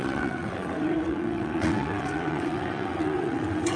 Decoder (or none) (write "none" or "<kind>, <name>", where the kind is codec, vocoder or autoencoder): vocoder, WaveNeXt